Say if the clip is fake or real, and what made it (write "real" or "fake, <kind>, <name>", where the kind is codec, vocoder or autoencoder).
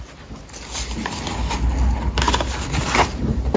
real